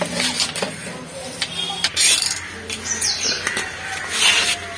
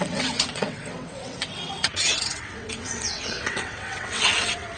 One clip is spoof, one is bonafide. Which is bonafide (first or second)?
first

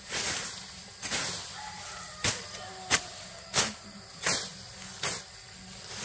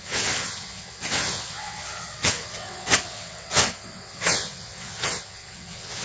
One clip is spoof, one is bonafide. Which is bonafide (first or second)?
first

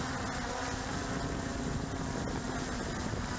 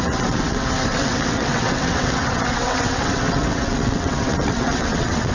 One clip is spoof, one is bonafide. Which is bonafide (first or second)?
first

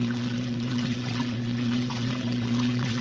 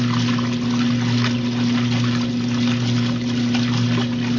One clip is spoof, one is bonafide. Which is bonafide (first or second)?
second